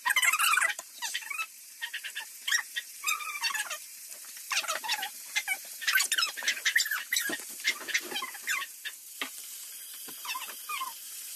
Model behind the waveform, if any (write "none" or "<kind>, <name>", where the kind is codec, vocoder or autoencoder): vocoder, BigVGAN v2